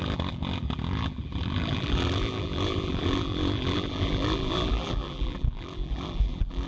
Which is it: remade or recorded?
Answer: remade